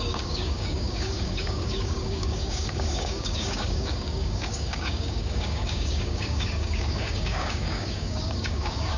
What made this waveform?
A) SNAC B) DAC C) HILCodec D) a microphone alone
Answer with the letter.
B